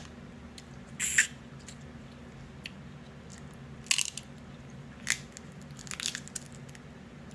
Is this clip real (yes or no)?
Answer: yes